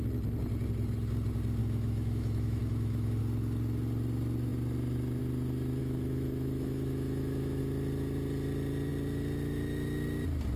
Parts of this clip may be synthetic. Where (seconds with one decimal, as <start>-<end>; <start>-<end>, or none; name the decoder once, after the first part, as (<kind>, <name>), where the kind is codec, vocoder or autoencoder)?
1.6-3.2 (autoencoder, DAC-VAE); 5.8-7.6